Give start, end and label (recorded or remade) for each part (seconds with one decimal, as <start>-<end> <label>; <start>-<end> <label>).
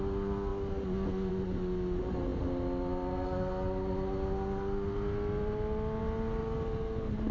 0.0-6.4 recorded; 6.4-7.3 remade